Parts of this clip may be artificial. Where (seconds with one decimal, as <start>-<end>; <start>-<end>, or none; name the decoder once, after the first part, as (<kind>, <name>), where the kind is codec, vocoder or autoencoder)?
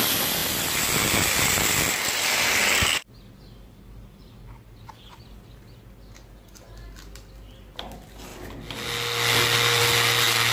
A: none